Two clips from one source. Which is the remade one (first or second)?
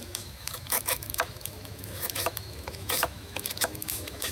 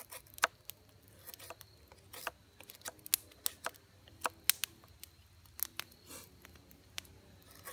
first